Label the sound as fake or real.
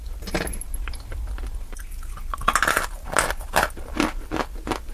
real